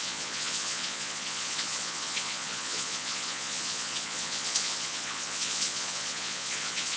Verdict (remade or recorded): remade